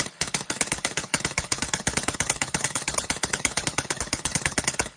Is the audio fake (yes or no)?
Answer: yes